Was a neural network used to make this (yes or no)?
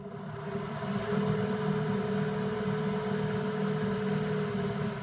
no